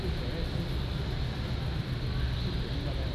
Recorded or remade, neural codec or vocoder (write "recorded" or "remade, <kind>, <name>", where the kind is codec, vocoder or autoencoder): recorded